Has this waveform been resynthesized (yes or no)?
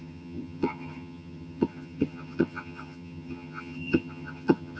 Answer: yes